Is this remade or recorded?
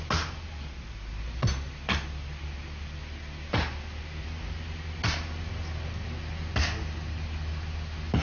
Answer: recorded